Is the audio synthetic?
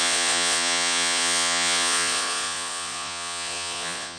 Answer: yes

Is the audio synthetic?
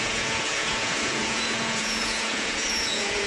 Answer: yes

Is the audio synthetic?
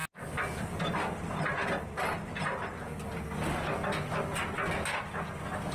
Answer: no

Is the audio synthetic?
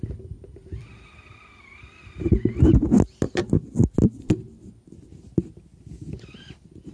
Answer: no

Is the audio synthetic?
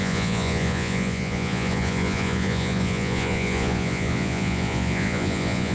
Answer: yes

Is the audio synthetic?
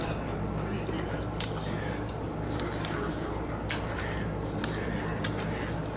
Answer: no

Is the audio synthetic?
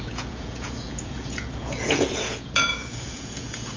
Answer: yes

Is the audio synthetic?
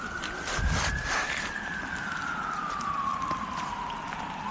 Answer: no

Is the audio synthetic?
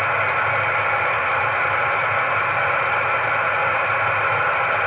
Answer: no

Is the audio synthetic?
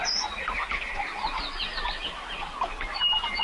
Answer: no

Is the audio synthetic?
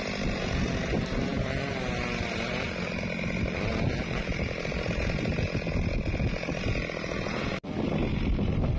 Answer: no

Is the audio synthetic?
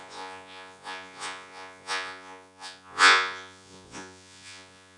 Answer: yes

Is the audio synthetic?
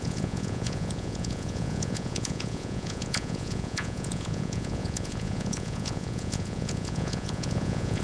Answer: yes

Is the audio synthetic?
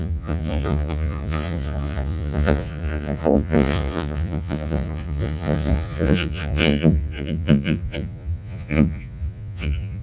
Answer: yes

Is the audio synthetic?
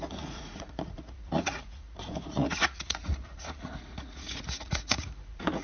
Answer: yes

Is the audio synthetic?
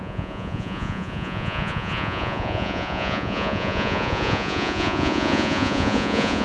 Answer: yes